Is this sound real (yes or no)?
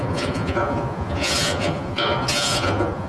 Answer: no